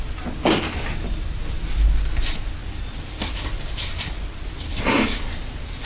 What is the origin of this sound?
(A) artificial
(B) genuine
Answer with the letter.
B